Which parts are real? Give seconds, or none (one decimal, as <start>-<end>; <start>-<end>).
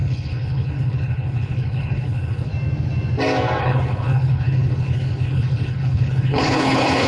2.5-3.6